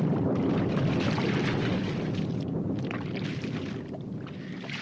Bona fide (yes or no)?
yes